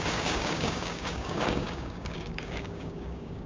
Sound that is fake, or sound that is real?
fake